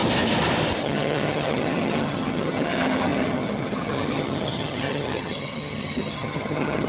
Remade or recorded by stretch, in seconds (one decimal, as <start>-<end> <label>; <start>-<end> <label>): 0.0-0.8 recorded; 0.8-6.9 remade